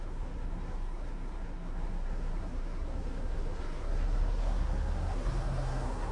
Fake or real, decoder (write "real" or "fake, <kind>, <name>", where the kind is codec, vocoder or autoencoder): fake, codec, SNAC